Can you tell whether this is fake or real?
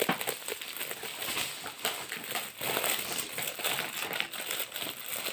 real